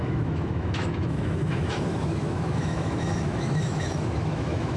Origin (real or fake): fake